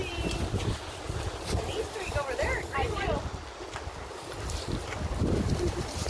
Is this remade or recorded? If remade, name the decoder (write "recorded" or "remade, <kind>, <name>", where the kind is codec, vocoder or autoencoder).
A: recorded